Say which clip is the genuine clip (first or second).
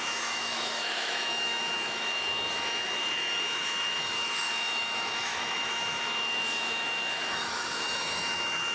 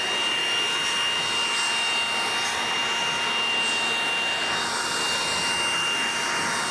second